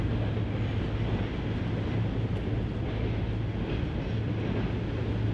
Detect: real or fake real